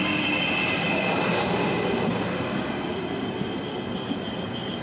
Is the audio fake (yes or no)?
no